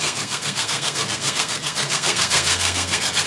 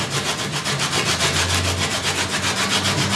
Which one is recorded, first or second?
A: second